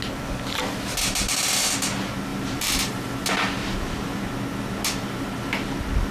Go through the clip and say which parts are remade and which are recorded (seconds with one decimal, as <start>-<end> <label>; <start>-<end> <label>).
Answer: 0.0-2.3 recorded; 2.3-2.9 remade; 2.9-3.6 recorded; 3.6-4.2 remade; 4.2-6.1 recorded